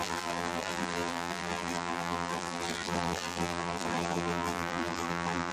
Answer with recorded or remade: remade